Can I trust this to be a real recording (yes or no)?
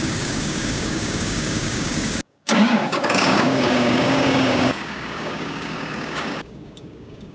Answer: no